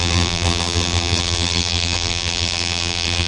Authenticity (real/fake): fake